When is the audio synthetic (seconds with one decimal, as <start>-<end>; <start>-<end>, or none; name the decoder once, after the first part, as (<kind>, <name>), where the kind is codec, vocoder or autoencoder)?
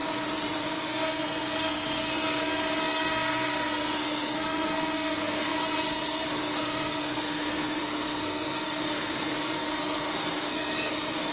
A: 0.6-11.3 (codec, SNAC)